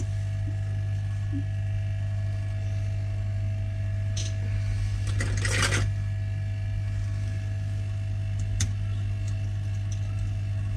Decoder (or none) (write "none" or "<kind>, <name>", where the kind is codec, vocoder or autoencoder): none